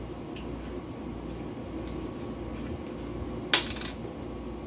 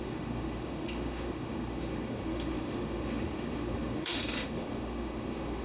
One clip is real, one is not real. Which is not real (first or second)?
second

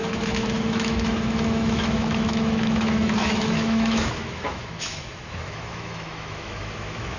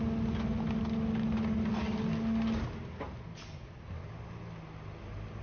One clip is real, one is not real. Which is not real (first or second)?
first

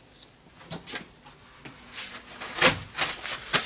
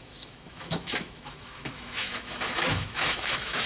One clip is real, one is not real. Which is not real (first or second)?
second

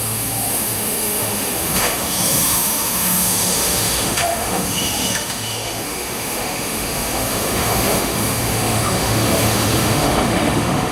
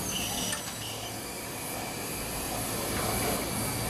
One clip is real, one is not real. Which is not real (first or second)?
first